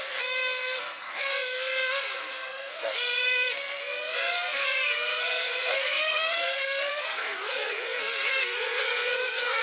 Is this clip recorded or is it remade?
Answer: remade